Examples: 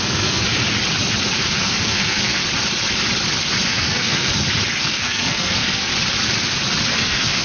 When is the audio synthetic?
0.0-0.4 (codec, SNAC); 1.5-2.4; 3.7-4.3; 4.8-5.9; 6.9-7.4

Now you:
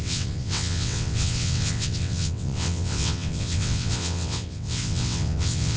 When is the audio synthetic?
0.0-5.8 (vocoder, WaveNeXt)

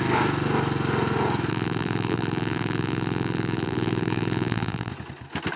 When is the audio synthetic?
1.5-4.9 (vocoder, BigVGAN v2)